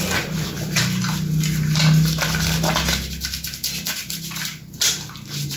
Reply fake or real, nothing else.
real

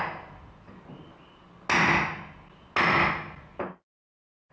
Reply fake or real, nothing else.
real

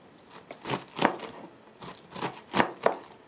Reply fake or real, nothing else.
real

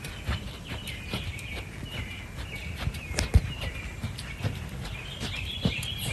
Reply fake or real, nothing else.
real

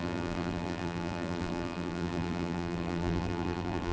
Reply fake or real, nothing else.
fake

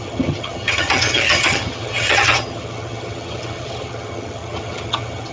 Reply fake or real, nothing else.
fake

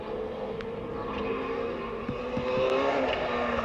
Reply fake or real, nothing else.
real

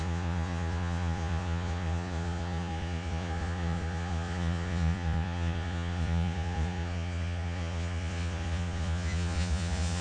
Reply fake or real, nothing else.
fake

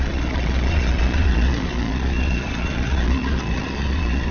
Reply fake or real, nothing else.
fake